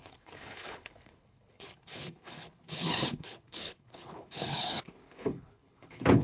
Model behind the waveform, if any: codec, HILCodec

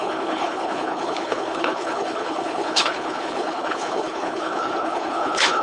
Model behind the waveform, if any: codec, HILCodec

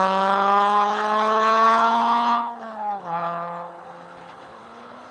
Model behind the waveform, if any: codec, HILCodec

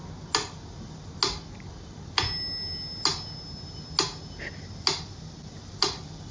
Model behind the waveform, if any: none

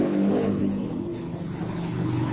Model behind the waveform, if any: codec, HILCodec